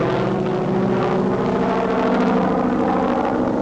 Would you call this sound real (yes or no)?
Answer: yes